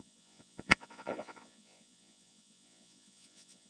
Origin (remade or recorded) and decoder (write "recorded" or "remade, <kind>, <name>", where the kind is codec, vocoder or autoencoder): remade, vocoder, Vocos